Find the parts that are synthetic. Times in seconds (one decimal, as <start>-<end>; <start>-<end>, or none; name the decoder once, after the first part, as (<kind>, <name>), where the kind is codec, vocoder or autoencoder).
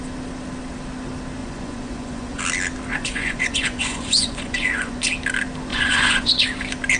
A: 1.4-2.4 (vocoder, Vocos); 2.9-5.0; 5.7-6.3